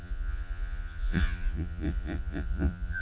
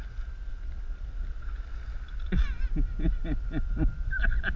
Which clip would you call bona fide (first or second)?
second